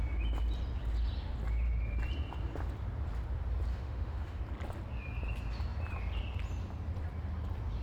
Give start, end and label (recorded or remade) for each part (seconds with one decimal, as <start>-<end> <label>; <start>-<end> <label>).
0.0-3.7 recorded; 3.7-4.4 remade; 4.4-7.8 recorded